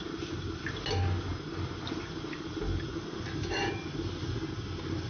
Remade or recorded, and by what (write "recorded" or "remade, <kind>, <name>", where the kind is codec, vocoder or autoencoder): recorded